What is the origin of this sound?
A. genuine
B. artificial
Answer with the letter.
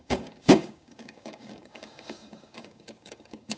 B